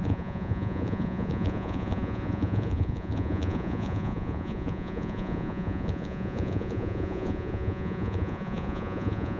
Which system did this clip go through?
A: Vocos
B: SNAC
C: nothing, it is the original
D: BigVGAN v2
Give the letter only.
A